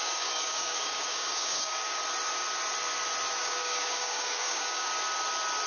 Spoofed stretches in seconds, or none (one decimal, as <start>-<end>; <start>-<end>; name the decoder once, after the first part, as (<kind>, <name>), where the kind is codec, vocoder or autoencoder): 0.0-2.0 (codec, DAC); 3.4-4.9